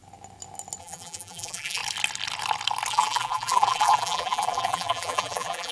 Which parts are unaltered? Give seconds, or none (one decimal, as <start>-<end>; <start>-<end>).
0.0-0.8; 1.8-2.9